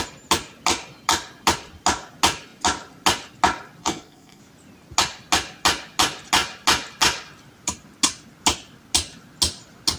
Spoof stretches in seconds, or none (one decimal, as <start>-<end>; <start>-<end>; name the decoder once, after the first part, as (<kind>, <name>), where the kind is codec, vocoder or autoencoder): 3.8-4.4 (codec, SNAC)